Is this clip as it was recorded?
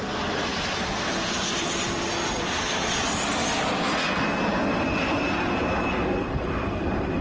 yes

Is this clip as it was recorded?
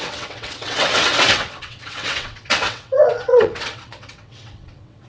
no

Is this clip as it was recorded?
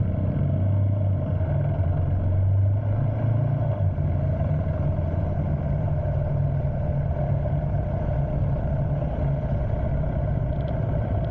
yes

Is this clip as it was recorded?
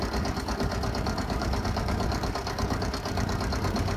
no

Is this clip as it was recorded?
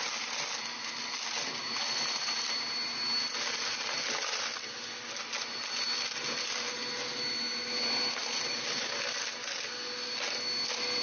yes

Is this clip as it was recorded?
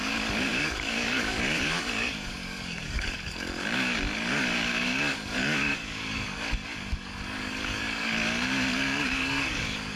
no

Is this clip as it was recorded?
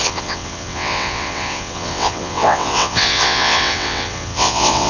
no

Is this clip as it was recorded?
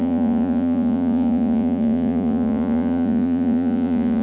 no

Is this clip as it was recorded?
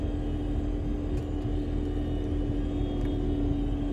yes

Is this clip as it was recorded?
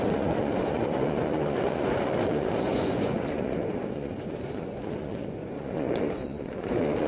no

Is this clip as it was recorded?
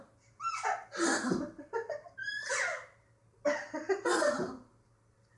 yes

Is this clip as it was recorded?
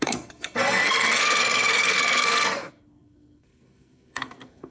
no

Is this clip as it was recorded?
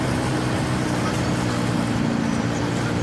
yes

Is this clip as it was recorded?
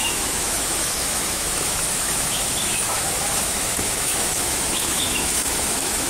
no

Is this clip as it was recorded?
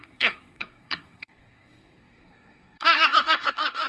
no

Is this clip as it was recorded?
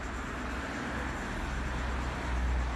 yes